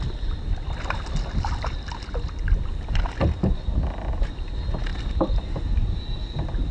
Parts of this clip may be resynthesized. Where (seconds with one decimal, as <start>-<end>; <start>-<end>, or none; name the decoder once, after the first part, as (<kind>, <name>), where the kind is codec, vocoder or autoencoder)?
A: none